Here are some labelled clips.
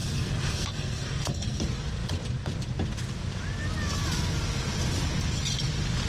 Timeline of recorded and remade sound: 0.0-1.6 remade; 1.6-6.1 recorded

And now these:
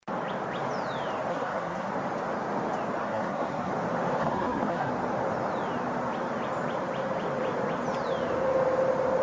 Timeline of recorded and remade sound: 0.0-1.3 recorded; 1.3-1.9 remade; 1.9-3.0 recorded; 3.0-3.7 remade; 3.7-4.2 recorded; 4.2-4.9 remade; 4.9-9.2 recorded

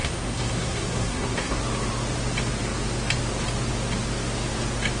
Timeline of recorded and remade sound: 0.0-1.6 remade; 1.6-5.0 recorded

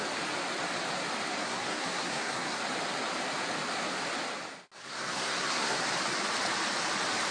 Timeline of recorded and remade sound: 0.0-1.4 recorded; 1.4-2.6 remade; 2.6-4.8 recorded; 4.8-5.8 remade; 5.8-7.3 recorded

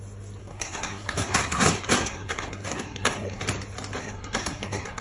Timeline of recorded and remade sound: 0.0-0.4 recorded; 0.4-3.4 remade; 3.4-4.0 recorded; 4.0-5.0 remade

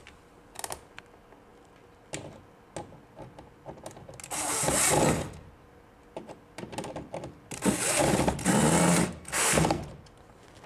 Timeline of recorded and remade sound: 0.0-9.2 recorded; 9.2-9.8 remade; 9.8-10.7 recorded

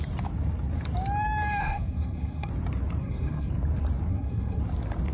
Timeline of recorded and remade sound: 0.0-1.6 recorded; 1.6-2.5 remade; 2.5-3.0 recorded; 3.0-3.5 remade; 3.5-4.1 recorded; 4.1-4.6 remade; 4.6-5.1 recorded